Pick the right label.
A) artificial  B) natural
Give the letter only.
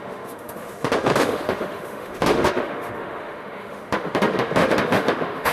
A